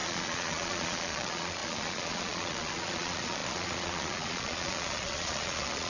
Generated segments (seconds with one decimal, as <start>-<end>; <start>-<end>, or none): 0.0-5.9